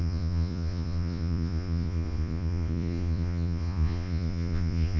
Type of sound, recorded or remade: remade